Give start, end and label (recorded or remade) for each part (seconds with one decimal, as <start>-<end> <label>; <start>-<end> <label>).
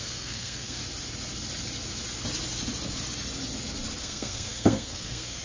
0.0-0.8 remade; 0.8-4.0 recorded; 4.0-5.4 remade